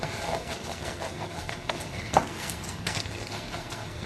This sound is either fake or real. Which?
fake